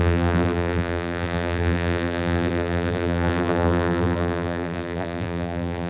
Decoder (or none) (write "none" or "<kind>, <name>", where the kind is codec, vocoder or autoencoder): vocoder, BigVGAN v2